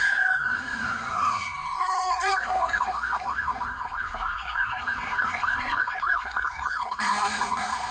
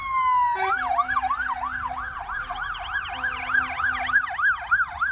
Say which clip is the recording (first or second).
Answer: second